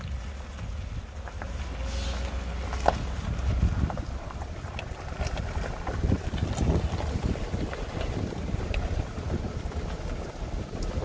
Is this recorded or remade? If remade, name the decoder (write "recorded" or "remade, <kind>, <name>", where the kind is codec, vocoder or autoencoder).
recorded